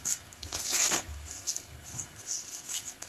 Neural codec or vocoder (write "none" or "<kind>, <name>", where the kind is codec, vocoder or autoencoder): codec, SNAC